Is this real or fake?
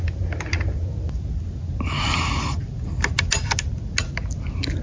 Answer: real